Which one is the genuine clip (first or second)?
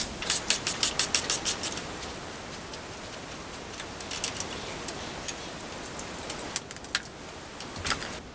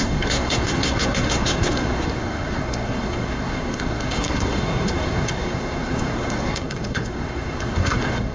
first